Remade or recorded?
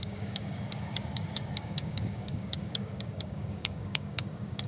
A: remade